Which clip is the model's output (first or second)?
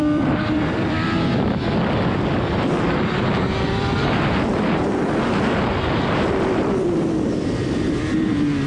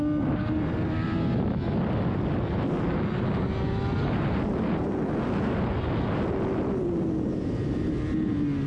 first